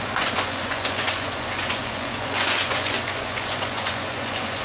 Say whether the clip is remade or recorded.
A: remade